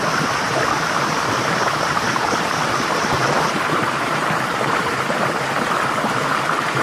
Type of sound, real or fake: fake